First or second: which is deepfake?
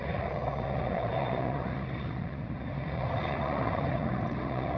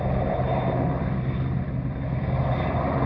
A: first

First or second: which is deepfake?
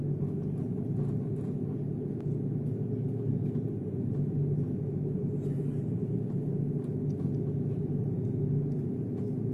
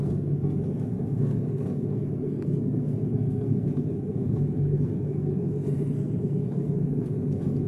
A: second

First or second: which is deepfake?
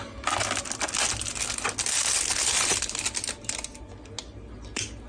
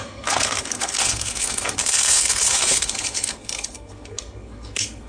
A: second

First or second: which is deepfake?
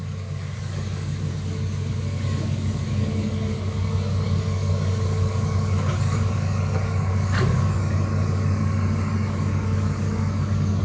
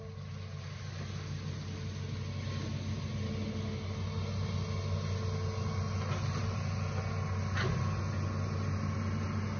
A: first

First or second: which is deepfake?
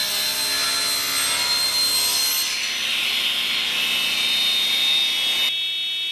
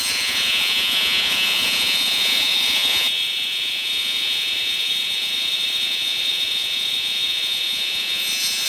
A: second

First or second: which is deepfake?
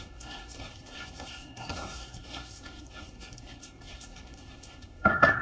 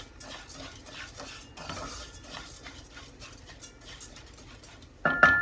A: first